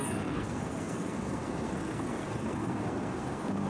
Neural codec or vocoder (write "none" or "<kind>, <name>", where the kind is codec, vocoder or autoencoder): codec, SNAC